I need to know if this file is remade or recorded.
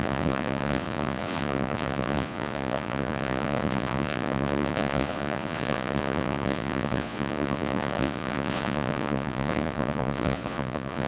remade